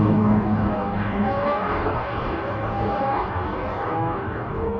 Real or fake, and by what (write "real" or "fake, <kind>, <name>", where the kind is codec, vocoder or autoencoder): fake, codec, DAC